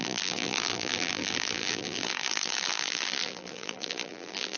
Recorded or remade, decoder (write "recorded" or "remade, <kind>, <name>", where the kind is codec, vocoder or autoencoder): remade, vocoder, BigVGAN v2